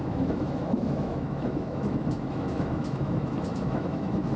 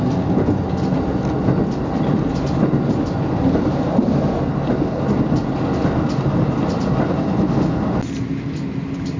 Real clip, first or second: second